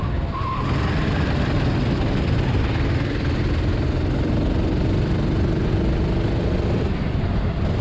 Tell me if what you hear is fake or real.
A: real